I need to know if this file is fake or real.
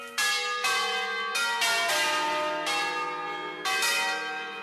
real